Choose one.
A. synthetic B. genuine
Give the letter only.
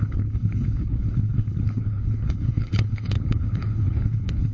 A